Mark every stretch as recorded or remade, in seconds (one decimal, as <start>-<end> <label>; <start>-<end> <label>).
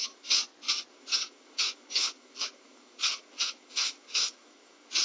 0.0-0.4 remade; 0.4-0.9 recorded; 0.9-5.0 remade